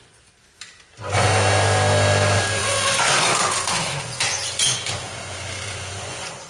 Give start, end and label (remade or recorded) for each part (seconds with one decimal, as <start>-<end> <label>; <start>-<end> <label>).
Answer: 0.0-2.6 recorded; 2.6-6.5 remade

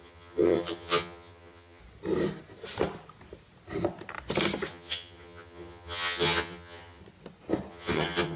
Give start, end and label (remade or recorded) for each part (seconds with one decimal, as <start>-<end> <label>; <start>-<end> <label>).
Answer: 0.0-1.8 remade; 1.8-4.7 recorded; 4.7-7.0 remade; 7.0-7.7 recorded; 7.7-8.4 remade

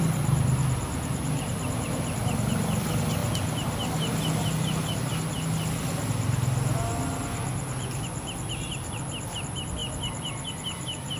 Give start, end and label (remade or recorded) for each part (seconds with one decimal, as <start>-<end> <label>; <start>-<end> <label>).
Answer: 0.0-11.2 recorded

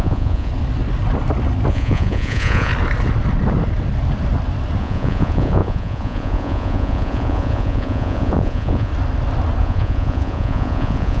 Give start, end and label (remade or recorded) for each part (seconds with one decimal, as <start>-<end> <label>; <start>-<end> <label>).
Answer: 0.0-0.5 remade; 0.5-1.7 recorded; 1.7-2.7 remade; 2.7-4.8 recorded; 4.8-8.9 remade; 8.9-9.6 recorded; 9.6-11.2 remade

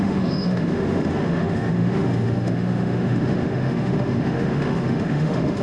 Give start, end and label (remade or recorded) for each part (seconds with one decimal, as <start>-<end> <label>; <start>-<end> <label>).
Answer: 0.0-5.6 remade

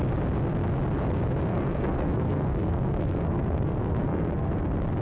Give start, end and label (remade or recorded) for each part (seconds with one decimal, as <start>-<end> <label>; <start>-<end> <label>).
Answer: 0.0-1.5 recorded; 1.5-4.5 remade; 4.5-5.0 recorded

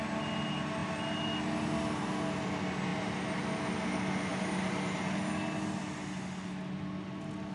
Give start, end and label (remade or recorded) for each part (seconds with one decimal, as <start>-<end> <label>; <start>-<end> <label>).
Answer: 0.0-7.5 recorded